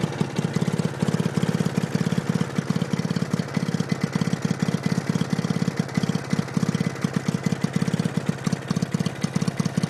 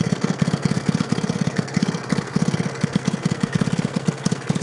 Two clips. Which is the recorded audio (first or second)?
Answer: first